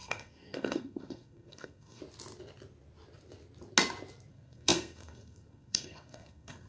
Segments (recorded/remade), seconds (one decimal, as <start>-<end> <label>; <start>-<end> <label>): 0.0-2.0 remade; 2.0-4.3 recorded; 4.3-6.7 remade